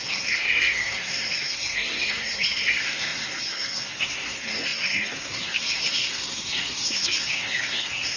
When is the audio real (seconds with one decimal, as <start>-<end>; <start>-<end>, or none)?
none